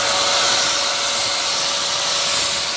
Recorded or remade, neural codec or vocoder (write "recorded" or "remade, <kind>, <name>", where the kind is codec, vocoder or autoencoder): recorded